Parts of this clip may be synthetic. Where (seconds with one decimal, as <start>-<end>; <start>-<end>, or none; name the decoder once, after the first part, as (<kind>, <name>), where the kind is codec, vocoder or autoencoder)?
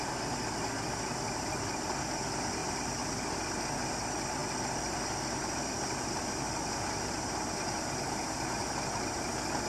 none